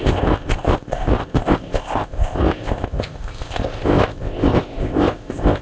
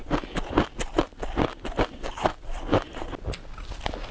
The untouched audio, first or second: second